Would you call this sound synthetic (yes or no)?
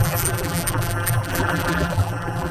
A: yes